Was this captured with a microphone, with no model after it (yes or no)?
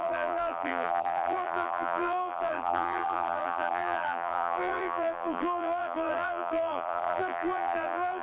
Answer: no